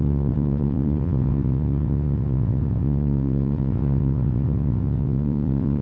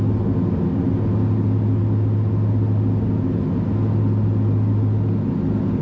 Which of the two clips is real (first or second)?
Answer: second